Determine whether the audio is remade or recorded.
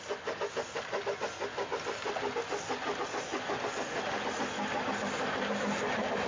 recorded